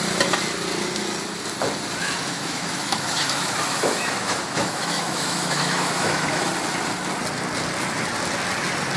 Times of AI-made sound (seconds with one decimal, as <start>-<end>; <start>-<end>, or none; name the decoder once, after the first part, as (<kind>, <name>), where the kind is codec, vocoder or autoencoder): 2.0-6.5 (autoencoder, DAC-VAE)